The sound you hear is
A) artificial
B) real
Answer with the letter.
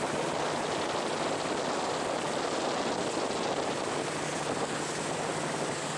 B